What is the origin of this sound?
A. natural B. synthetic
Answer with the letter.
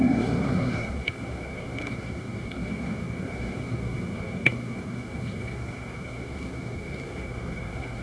B